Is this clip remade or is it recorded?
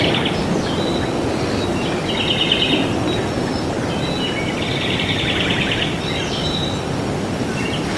recorded